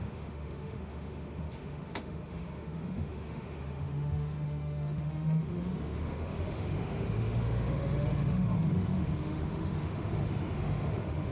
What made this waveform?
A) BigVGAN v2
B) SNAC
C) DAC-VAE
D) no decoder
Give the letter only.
C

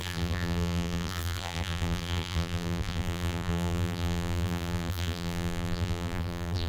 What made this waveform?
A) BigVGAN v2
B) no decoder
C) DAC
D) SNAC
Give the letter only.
A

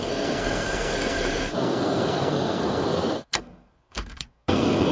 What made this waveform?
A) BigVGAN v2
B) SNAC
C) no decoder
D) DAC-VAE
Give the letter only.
B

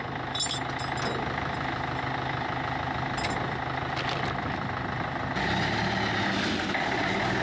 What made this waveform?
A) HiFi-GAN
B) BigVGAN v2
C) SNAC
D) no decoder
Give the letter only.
D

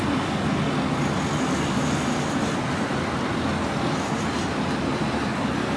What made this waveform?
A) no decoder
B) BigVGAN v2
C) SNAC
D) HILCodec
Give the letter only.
A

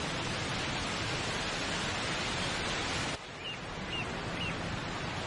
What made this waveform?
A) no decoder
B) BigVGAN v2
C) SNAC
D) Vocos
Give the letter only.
A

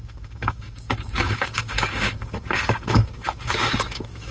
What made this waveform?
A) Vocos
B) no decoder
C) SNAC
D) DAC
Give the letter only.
D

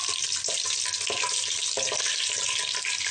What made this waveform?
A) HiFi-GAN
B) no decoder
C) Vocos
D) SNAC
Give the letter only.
B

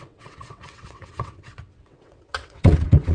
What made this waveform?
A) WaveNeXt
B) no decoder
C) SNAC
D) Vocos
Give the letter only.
A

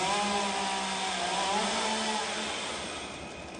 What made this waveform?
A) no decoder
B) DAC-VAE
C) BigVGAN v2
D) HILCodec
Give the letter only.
A